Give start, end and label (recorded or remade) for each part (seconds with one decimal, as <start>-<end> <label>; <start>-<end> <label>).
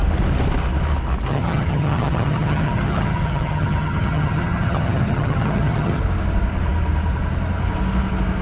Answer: 0.0-1.3 recorded; 1.3-6.0 remade; 6.0-8.4 recorded